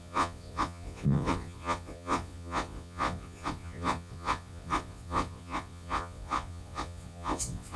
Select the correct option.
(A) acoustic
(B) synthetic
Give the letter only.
B